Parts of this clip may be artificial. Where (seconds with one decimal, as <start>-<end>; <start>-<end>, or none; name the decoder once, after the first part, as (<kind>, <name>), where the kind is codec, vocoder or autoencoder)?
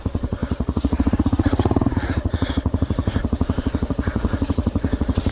0.0-5.3 (vocoder, Vocos)